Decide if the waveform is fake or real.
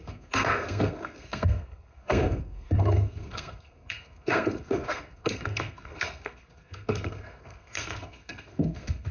fake